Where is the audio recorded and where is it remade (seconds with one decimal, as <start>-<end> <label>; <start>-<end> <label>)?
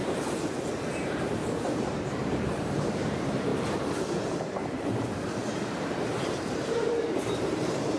0.0-3.5 remade; 3.5-4.3 recorded; 4.3-8.0 remade